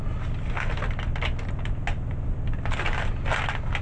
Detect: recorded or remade recorded